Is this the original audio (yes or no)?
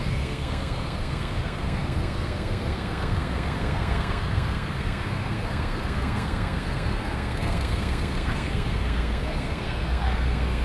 no